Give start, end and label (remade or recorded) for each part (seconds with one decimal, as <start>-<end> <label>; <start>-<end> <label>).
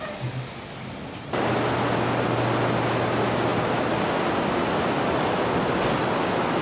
0.0-6.6 recorded